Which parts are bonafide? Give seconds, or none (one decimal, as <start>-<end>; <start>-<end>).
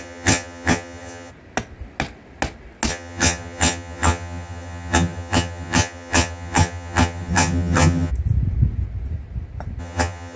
1.3-2.9; 8.1-9.8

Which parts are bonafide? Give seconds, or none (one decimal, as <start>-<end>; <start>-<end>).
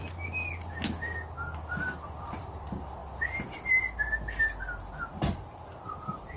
0.0-6.4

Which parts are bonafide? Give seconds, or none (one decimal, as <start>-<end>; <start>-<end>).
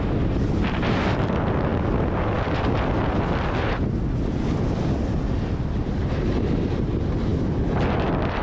0.0-8.4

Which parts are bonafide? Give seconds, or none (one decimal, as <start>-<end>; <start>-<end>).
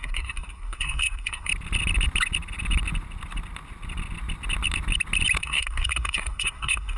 1.5-5.4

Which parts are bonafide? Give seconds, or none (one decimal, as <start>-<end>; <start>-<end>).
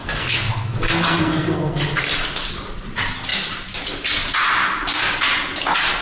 1.8-6.0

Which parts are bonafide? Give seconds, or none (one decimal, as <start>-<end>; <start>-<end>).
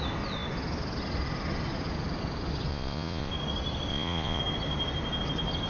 0.0-2.7; 3.3-3.9; 4.4-5.7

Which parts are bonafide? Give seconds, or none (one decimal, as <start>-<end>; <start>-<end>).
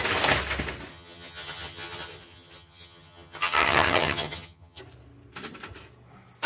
0.0-0.9; 4.8-6.5